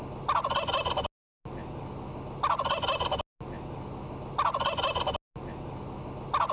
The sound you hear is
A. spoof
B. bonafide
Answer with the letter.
B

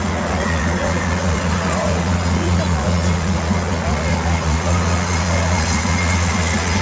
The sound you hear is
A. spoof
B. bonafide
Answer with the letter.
A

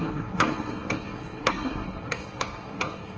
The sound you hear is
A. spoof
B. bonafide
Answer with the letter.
A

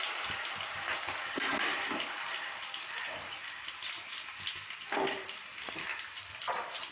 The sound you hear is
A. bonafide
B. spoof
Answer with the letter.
A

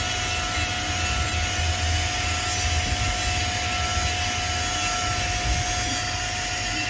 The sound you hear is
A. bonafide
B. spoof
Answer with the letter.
A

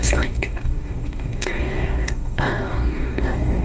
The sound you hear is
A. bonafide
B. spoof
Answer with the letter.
B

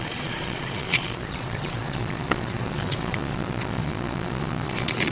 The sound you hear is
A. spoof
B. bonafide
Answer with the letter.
A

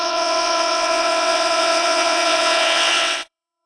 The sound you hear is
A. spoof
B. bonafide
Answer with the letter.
A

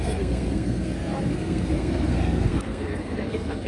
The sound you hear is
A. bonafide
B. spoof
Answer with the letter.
B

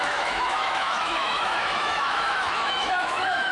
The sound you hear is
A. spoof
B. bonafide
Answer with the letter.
A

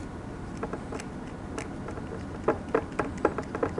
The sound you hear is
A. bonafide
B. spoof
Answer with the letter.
A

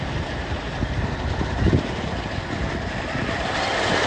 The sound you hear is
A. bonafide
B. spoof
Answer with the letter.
B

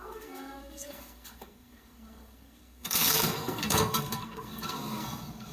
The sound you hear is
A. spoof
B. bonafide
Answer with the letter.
A